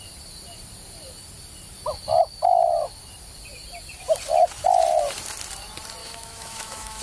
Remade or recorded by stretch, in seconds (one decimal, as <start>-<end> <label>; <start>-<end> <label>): 0.0-6.0 recorded; 6.0-7.0 remade